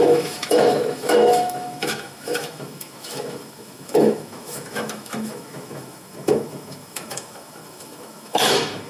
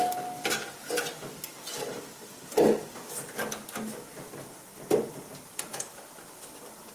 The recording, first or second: second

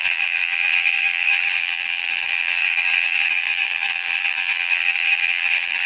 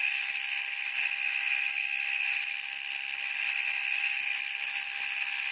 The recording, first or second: second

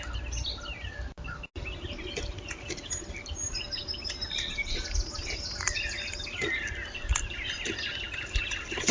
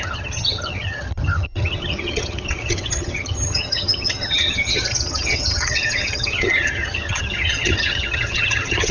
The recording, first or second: first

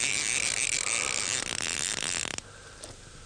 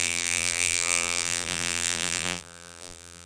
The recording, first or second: first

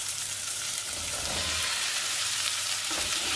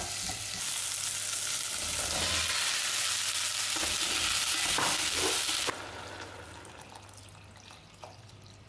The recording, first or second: second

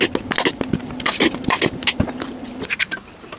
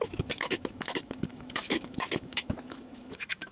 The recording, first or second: first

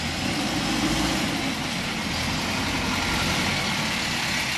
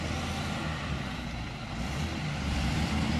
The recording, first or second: first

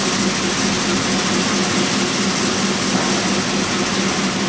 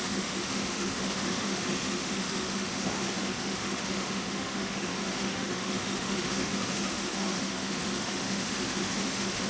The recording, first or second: first